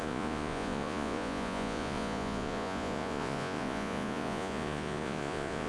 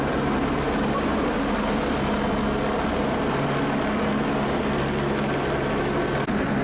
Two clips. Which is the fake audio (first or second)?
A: first